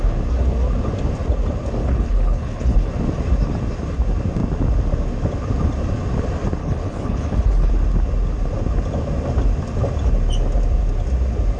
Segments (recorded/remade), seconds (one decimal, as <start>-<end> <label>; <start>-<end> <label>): 0.0-1.8 recorded; 1.8-2.9 remade; 2.9-6.6 recorded; 6.6-7.7 remade; 7.7-11.6 recorded